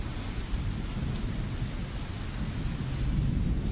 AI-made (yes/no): no